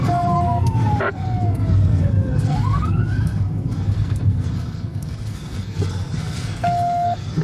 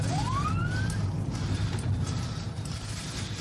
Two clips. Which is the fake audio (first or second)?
first